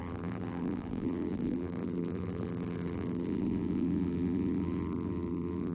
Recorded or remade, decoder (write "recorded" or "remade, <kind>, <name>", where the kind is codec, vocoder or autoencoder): remade, vocoder, BigVGAN v2